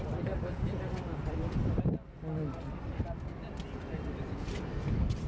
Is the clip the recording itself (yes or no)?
no